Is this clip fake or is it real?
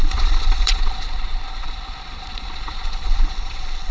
fake